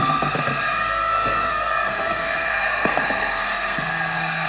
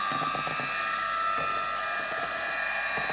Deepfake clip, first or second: first